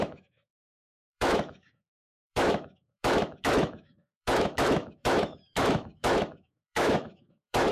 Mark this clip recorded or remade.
remade